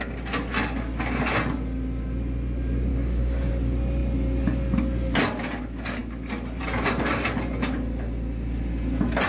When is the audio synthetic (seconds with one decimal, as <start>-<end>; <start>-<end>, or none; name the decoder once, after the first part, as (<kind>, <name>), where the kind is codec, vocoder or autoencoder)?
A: 2.9-3.5 (codec, DAC)